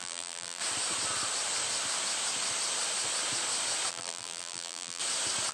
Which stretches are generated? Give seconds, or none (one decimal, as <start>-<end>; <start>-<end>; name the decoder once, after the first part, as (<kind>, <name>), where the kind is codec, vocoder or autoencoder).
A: 0.0-0.6 (vocoder, BigVGAN v2); 3.9-5.0